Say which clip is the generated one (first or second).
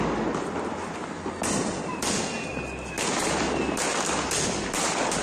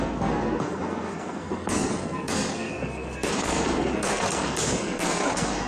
second